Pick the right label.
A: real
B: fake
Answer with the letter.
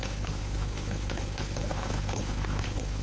B